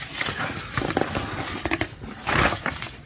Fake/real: real